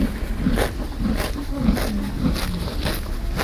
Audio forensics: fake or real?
real